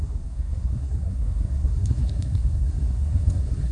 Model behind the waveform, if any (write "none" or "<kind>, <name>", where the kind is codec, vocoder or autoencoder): codec, SNAC